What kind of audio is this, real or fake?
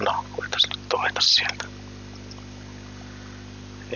real